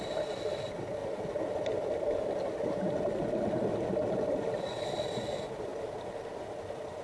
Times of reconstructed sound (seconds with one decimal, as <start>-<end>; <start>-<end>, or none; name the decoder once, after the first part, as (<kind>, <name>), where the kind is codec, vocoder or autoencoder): none